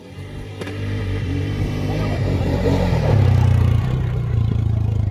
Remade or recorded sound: remade